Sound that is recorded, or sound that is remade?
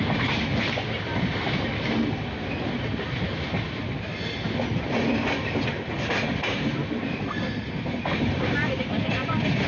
recorded